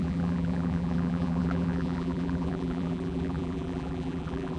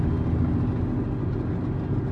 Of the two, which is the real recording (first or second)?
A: second